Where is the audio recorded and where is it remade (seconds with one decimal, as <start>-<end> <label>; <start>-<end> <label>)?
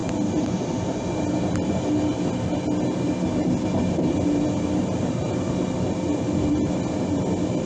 0.0-7.7 recorded